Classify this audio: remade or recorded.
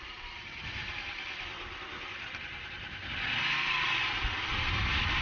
recorded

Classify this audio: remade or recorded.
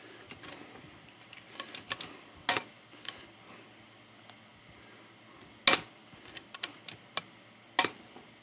recorded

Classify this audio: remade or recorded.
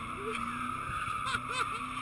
recorded